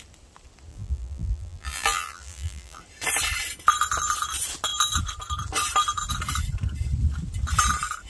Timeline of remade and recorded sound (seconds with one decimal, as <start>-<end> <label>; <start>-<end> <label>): 0.0-0.7 recorded; 0.7-2.8 remade; 2.8-8.1 recorded